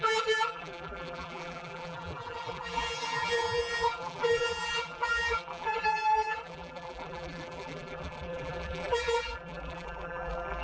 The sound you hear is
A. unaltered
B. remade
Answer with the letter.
B